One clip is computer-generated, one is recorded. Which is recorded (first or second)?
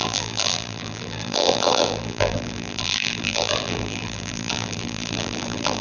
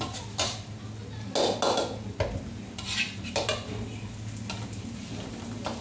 second